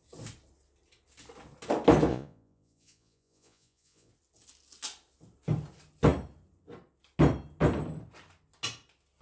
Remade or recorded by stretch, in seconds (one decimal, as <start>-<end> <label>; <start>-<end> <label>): 0.0-2.1 recorded; 2.1-4.1 remade; 4.1-9.2 recorded